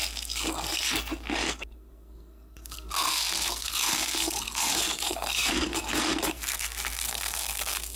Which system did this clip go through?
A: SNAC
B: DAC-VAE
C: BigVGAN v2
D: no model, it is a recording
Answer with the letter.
A